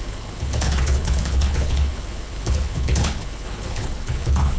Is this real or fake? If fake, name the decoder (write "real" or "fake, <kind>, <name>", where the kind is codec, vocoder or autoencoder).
fake, codec, HILCodec